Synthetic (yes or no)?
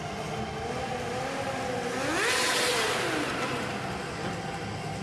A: no